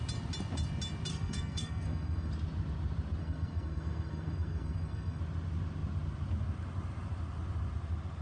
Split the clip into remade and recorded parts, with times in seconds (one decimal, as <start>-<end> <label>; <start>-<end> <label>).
0.0-1.1 recorded; 1.1-2.3 remade; 2.3-3.2 recorded; 3.2-5.2 remade; 5.2-8.2 recorded